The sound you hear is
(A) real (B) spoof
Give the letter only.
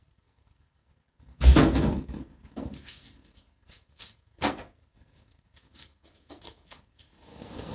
B